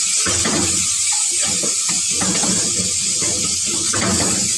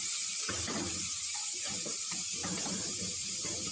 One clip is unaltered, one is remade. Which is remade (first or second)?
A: second